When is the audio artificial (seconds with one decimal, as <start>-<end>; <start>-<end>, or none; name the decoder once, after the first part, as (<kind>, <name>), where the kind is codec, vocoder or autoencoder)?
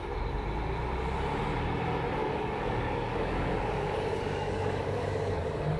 2.2-5.8 (codec, DAC)